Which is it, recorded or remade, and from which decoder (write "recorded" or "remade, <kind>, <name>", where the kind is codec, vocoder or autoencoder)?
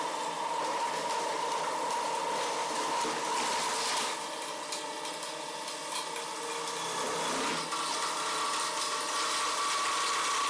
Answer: recorded